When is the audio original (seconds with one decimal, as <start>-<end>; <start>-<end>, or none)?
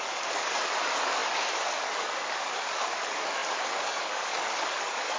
none